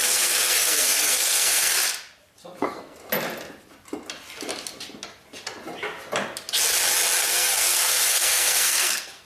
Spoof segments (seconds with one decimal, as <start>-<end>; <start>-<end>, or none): 0.0-1.7; 2.6-3.0; 7.2-9.3